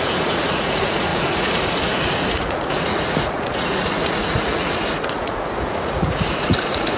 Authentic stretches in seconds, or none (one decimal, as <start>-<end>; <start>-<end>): none